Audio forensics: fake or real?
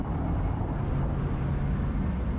real